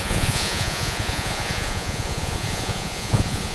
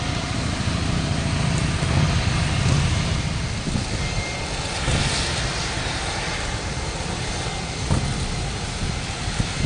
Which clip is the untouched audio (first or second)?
second